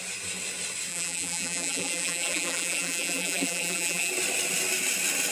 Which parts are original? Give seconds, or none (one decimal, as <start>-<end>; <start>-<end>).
0.0-0.9; 4.1-5.3